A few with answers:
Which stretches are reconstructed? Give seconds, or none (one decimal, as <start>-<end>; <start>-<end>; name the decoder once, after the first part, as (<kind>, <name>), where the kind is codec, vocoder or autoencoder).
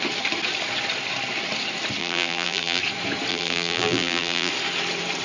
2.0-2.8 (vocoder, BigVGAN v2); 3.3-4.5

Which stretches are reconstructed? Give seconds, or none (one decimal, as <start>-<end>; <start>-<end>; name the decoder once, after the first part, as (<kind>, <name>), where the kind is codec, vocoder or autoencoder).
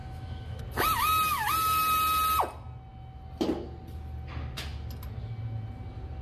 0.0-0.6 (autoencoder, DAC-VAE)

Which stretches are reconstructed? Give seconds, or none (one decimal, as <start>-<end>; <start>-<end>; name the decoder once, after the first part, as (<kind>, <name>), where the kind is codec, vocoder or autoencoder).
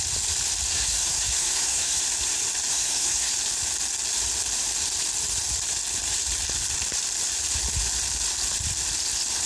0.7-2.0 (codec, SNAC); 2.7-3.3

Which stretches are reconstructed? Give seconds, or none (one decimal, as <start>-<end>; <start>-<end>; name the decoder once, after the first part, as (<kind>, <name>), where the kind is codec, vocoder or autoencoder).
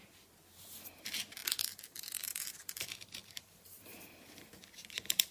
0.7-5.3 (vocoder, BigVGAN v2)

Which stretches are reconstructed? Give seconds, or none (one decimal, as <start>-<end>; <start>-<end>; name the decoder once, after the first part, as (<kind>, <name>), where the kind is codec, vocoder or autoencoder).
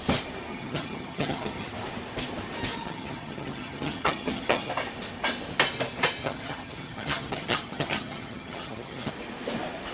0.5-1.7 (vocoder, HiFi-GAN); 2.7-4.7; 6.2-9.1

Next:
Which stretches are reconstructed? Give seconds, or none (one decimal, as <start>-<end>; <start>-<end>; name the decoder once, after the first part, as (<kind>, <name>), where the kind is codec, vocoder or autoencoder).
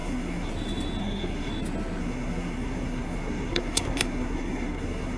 0.0-0.5 (codec, SNAC); 1.0-1.5; 2.0-5.2